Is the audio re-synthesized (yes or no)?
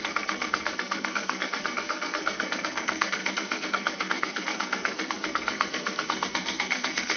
yes